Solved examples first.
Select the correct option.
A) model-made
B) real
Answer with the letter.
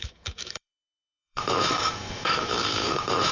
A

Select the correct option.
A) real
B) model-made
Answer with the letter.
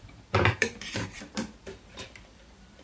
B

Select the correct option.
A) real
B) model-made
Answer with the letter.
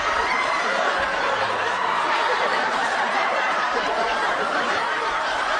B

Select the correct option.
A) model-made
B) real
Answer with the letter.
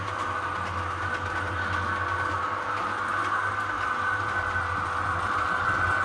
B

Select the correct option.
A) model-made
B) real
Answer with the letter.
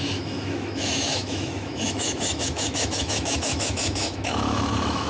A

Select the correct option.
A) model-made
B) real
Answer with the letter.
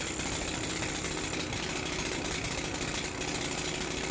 B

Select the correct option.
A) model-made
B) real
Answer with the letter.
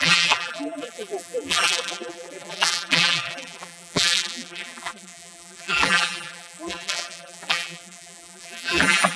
A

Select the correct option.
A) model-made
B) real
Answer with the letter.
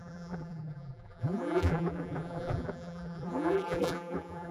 A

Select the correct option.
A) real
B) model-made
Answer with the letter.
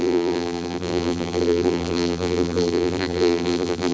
B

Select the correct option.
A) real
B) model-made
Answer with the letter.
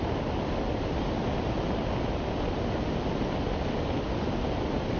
A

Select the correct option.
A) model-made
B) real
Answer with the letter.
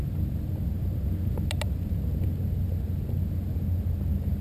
B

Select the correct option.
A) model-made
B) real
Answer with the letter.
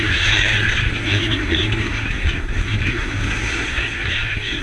A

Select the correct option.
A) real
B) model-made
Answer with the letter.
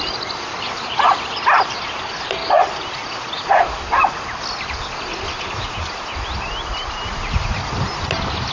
A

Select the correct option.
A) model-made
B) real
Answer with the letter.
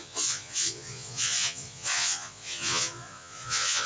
A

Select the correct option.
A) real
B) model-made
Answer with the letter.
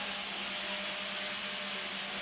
A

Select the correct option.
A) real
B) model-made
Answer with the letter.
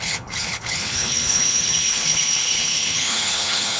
B